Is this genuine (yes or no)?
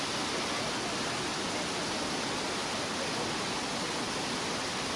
yes